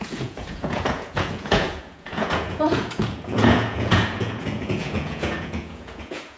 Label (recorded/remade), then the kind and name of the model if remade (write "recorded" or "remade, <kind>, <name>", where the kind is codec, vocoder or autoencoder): remade, vocoder, Vocos